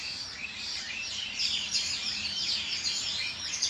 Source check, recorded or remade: remade